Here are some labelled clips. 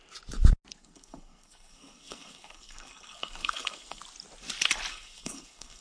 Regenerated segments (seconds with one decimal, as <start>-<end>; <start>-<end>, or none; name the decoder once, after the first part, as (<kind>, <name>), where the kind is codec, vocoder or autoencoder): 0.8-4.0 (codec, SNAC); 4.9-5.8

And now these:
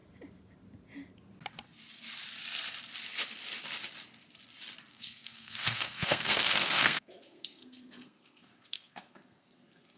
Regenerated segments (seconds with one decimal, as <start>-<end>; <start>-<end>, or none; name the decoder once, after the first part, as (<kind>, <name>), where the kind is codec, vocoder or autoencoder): 4.9-10.0 (codec, SNAC)

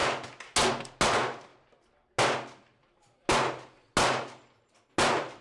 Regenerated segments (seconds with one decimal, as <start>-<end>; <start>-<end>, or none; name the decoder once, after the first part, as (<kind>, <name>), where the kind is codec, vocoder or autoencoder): none

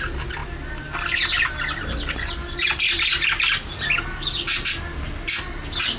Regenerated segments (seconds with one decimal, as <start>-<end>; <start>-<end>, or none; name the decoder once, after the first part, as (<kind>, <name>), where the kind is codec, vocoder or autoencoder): none

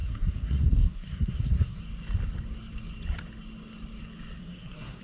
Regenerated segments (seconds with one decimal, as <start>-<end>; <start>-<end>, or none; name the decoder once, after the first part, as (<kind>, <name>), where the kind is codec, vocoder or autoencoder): 0.0-1.8 (codec, SNAC); 4.4-5.0

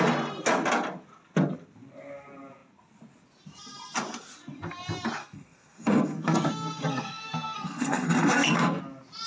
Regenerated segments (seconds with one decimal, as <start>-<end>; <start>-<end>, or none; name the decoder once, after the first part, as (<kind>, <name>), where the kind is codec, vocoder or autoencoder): 5.2-8.8 (codec, SNAC)